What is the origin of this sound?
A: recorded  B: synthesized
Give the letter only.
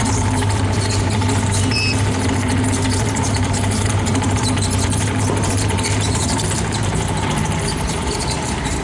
B